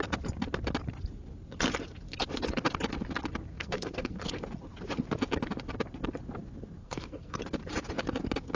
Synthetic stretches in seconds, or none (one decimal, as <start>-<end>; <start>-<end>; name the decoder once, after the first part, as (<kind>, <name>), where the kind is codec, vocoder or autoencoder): 3.5-4.3 (codec, SNAC); 6.8-7.4